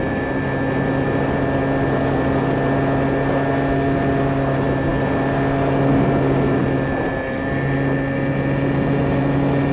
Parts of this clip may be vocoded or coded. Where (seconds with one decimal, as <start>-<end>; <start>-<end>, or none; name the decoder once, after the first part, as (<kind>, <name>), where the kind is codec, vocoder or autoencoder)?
none